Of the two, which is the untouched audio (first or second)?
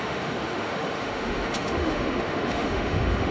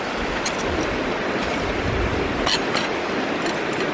second